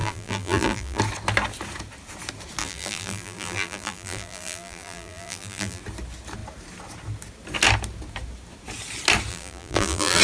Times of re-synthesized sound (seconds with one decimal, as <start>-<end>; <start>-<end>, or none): 0.0-1.0; 2.6-5.8; 9.3-10.2